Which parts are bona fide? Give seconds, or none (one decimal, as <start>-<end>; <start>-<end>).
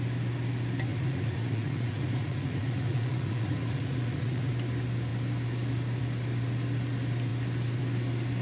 0.0-0.9; 4.5-8.4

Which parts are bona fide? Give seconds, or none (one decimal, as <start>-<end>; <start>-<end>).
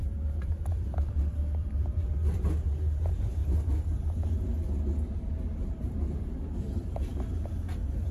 3.4-5.7; 7.1-8.1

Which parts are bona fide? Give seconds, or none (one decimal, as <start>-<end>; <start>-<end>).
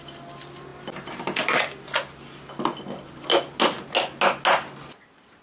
0.0-5.4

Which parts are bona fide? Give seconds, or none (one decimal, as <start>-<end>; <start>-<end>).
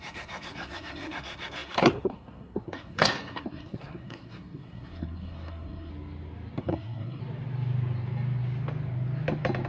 5.9-6.6; 7.2-9.7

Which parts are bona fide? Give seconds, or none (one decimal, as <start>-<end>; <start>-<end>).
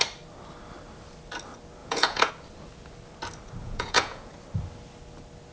0.0-1.8; 2.3-3.6; 4.3-5.5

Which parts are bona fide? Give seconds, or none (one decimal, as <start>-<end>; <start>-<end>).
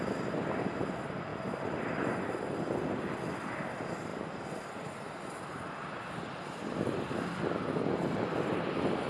0.0-1.3; 2.3-9.1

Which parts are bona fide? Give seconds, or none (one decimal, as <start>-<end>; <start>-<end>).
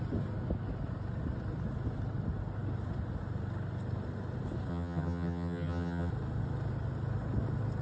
0.0-4.7; 6.1-7.8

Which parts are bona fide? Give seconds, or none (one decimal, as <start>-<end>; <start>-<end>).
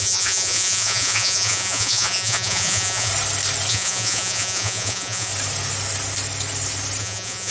3.1-3.7; 5.3-7.0